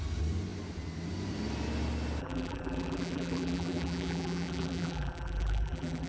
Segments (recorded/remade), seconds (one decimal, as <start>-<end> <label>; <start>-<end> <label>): 0.0-2.2 recorded; 2.2-6.1 remade